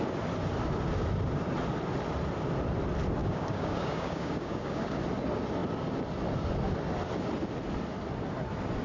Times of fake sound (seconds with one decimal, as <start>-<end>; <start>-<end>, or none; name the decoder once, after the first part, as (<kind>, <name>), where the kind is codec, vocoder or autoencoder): 3.2-5.0 (codec, DAC)